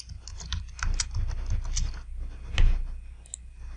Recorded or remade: recorded